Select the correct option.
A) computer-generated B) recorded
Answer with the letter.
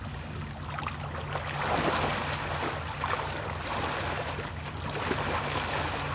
B